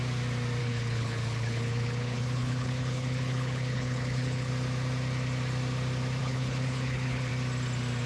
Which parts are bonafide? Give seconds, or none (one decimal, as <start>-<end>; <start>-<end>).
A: 0.0-0.6; 4.5-6.2; 7.3-8.1